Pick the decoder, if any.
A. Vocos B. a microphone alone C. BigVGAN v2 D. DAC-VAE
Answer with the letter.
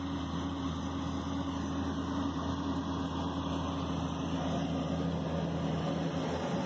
B